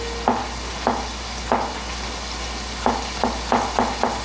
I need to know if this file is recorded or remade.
recorded